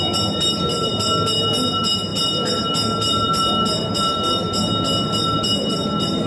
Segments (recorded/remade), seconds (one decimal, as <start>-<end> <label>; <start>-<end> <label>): 0.0-6.3 recorded